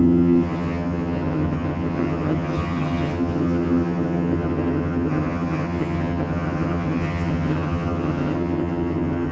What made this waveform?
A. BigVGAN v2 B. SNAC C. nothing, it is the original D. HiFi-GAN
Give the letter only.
D